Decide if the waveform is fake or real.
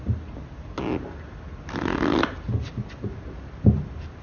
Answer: real